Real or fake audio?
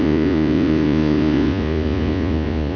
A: fake